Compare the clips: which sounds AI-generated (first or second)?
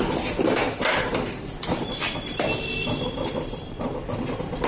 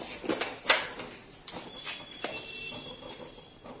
first